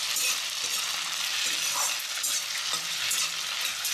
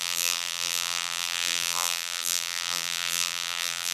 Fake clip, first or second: second